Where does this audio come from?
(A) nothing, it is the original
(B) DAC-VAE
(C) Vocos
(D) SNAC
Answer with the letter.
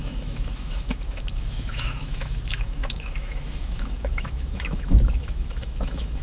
B